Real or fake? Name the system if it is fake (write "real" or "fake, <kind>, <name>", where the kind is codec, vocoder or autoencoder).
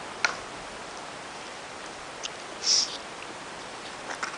real